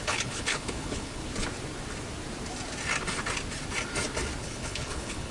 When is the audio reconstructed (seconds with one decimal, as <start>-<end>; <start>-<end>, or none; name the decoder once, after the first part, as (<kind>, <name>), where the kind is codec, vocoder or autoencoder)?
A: 0.0-1.2 (codec, HILCodec); 4.4-5.3